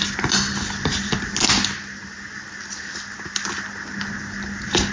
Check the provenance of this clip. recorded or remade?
recorded